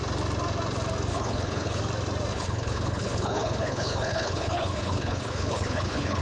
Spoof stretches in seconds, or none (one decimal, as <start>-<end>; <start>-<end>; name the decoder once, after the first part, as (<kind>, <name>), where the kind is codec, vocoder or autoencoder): 1.1-1.8 (codec, HILCodec); 2.3-6.2